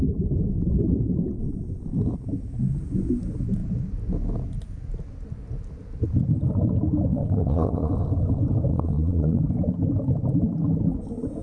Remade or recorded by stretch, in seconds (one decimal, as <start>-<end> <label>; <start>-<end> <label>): 0.0-7.1 recorded; 7.1-7.9 remade; 7.9-8.7 recorded; 8.7-9.4 remade; 9.4-11.4 recorded